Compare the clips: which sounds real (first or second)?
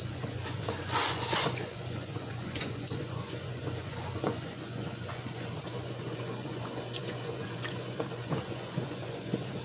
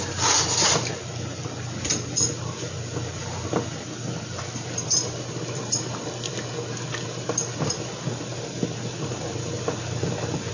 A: second